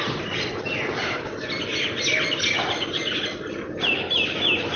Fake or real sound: real